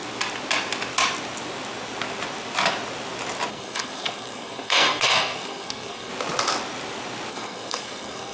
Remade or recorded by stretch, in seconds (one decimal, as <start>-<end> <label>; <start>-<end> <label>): 0.0-3.5 recorded; 3.5-6.1 remade; 6.1-7.3 recorded; 7.3-8.3 remade